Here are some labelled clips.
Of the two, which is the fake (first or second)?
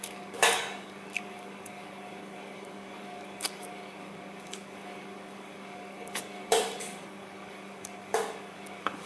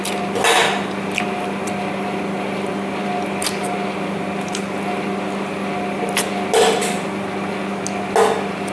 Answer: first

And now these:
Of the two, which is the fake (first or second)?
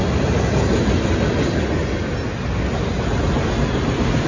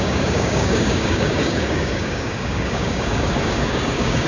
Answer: second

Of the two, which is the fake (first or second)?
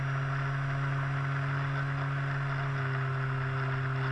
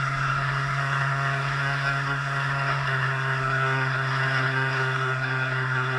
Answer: second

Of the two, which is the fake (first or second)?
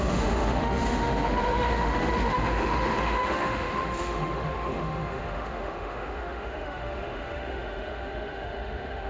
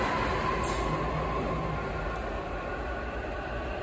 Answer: first